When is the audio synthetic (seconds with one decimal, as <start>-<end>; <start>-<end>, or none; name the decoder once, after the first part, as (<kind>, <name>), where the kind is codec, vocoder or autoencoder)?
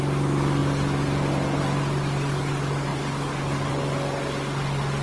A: 2.9-3.7 (vocoder, BigVGAN v2)